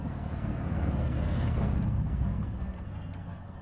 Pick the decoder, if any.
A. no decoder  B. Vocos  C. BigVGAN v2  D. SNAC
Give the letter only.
D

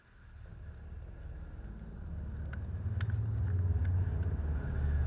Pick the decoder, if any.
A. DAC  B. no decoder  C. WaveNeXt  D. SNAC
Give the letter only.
B